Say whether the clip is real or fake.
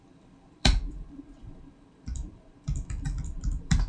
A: fake